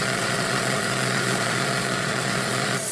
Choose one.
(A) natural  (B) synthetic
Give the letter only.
B